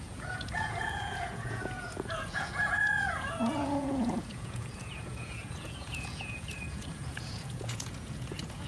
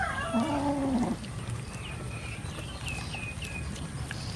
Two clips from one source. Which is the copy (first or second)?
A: first